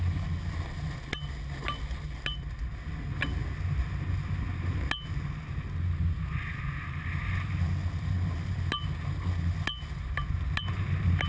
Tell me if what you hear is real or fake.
real